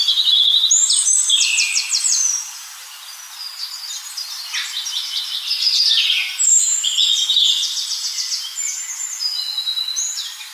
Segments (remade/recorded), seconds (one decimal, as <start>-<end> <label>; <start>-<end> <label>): 0.0-10.5 recorded